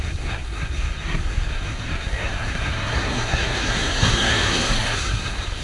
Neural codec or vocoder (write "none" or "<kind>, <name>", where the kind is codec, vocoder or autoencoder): codec, SNAC